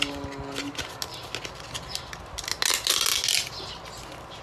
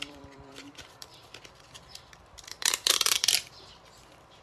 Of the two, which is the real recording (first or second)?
first